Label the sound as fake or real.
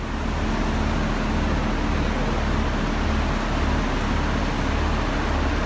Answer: real